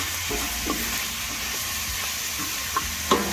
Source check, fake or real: real